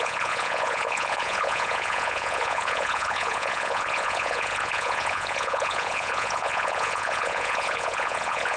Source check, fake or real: fake